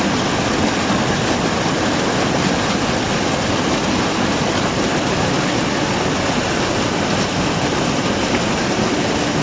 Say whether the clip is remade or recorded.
recorded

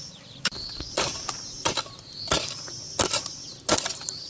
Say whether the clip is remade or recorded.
recorded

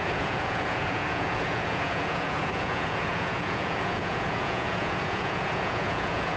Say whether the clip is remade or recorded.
remade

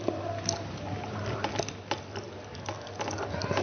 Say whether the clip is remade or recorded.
recorded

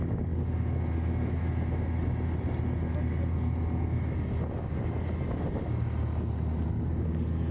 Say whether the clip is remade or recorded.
recorded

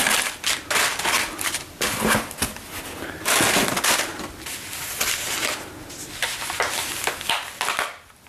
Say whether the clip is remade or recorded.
recorded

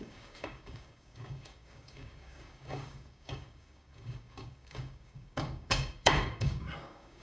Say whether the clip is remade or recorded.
remade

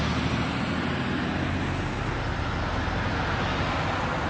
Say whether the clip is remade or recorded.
recorded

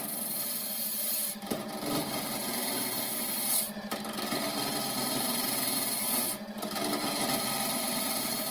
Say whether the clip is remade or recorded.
remade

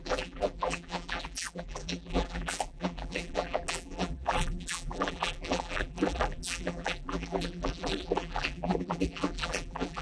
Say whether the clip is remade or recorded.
remade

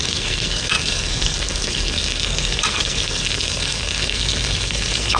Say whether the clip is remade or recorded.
remade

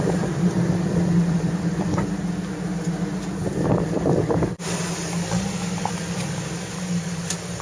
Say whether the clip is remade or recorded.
recorded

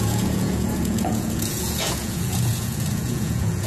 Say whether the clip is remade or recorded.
remade